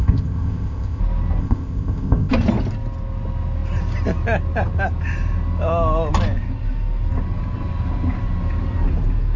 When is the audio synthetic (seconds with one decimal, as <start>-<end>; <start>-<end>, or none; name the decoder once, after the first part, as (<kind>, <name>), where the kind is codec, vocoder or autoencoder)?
0.0-1.0 (codec, ZipCodec); 1.4-2.3

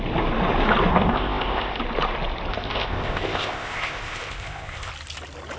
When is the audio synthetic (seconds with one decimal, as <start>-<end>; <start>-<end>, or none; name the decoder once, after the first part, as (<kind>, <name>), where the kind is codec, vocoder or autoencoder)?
0.9-1.8 (codec, ZipCodec); 2.5-4.9

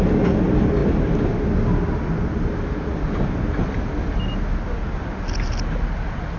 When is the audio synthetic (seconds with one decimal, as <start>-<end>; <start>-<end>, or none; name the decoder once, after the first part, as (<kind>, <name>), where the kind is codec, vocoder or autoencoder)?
none

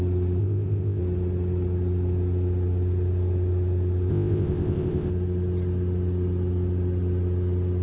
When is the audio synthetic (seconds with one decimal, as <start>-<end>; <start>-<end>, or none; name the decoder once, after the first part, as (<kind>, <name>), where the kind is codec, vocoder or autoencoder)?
0.4-1.0 (codec, ZipCodec); 4.1-5.1

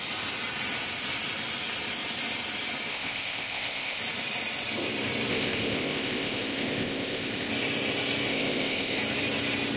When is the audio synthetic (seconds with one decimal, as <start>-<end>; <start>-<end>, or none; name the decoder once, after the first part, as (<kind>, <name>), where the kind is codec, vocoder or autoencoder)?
2.9-4.0 (codec, ZipCodec); 5.3-7.5; 8.3-9.0